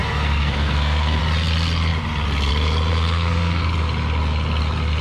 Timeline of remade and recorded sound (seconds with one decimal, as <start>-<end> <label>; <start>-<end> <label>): 0.0-1.2 remade; 1.2-2.9 recorded; 2.9-3.6 remade; 3.6-5.0 recorded